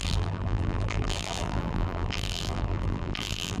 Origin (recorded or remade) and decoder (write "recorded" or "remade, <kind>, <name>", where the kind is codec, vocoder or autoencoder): remade, vocoder, BigVGAN v2